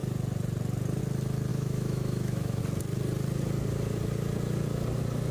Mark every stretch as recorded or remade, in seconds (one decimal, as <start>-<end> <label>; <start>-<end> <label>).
0.0-1.5 recorded; 1.5-2.6 remade; 2.6-5.3 recorded